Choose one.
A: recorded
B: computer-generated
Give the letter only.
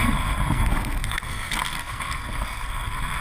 B